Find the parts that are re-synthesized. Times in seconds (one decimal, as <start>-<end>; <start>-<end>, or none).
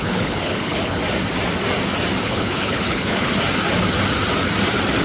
0.0-1.0; 2.2-3.3